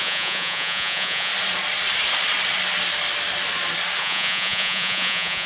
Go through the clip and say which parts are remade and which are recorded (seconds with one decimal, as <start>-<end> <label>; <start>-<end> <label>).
0.0-1.3 remade; 1.3-4.0 recorded; 4.0-5.5 remade